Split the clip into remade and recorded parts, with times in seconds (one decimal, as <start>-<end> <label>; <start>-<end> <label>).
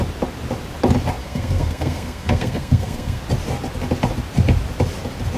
0.0-1.2 recorded; 1.2-3.2 remade; 3.2-5.4 recorded